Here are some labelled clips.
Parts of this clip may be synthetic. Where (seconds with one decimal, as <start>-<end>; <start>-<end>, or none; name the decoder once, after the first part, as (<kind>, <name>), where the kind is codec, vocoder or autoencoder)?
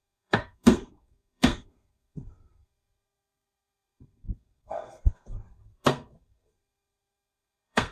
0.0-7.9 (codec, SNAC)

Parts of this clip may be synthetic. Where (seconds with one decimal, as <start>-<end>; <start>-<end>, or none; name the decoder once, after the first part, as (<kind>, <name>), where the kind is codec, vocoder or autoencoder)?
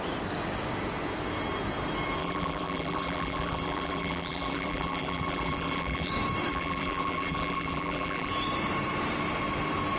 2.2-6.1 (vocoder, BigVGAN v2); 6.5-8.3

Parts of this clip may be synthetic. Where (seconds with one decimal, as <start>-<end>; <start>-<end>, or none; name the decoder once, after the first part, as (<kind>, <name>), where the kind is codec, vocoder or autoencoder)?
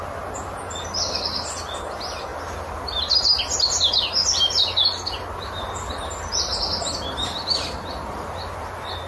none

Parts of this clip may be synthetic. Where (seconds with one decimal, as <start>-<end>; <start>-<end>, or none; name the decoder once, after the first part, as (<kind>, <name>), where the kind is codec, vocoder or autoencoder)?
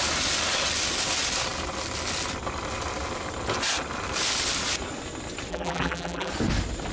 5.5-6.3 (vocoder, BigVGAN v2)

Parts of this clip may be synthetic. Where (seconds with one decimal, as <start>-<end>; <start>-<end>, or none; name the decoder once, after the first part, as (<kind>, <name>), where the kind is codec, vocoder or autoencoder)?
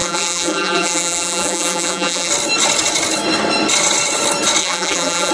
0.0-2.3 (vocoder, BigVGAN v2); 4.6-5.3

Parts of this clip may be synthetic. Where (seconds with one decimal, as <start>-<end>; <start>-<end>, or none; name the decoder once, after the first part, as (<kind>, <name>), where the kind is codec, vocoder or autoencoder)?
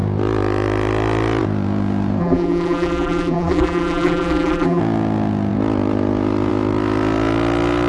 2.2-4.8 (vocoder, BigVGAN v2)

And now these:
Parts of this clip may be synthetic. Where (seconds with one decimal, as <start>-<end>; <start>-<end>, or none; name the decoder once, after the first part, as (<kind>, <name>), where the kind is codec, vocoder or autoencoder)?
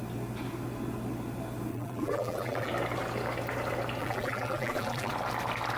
1.7-2.7 (vocoder, BigVGAN v2); 4.0-5.1